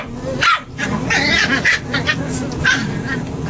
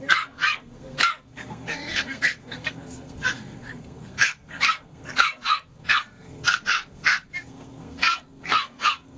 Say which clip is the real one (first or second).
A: first